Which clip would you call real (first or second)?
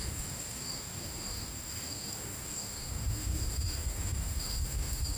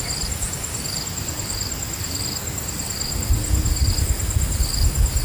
second